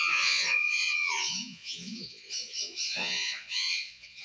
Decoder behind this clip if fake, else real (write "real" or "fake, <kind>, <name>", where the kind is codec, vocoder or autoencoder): fake, vocoder, Vocos